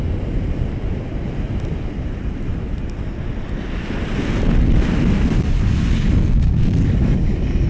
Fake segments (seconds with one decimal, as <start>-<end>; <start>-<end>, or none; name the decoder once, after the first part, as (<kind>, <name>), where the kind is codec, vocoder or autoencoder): 6.2-6.8 (codec, SNAC)